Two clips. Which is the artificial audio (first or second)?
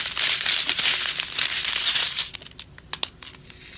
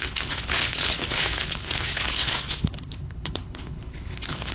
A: second